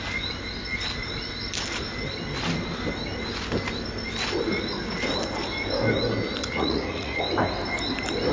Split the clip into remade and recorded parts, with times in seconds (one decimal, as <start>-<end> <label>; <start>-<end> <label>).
0.0-6.4 recorded; 6.4-7.2 remade; 7.2-8.3 recorded